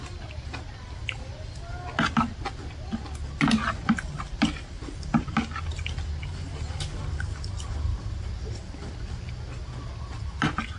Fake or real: real